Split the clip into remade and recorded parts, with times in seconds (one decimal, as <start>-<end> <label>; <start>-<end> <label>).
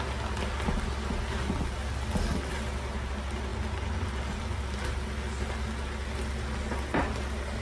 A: 0.0-7.6 recorded